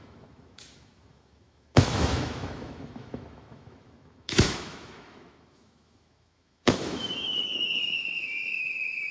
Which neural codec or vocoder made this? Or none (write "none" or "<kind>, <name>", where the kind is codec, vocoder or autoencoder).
autoencoder, DAC-VAE